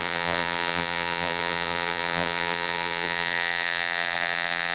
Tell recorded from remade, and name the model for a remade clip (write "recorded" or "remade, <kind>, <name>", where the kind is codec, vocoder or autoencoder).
remade, vocoder, BigVGAN v2